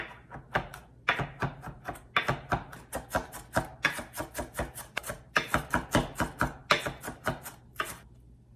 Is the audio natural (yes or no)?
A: yes